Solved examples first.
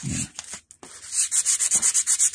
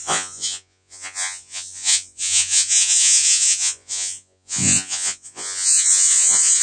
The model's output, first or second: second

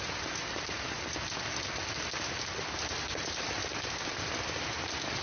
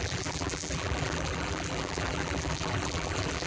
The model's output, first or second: second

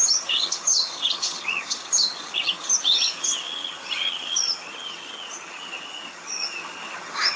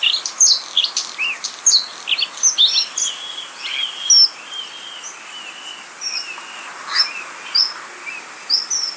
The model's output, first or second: first